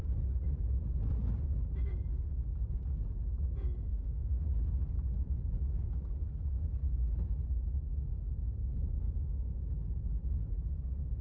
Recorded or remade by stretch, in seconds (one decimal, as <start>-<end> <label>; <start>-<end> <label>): 0.0-3.9 recorded; 3.9-4.4 remade; 4.4-9.0 recorded; 9.0-9.5 remade; 9.5-11.2 recorded